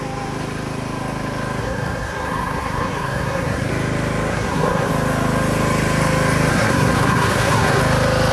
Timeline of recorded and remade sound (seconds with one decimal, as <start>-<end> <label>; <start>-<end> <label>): 0.0-1.6 recorded; 1.6-3.7 remade; 3.7-4.3 recorded; 4.3-4.9 remade; 4.9-6.5 recorded; 6.5-7.8 remade; 7.8-8.3 recorded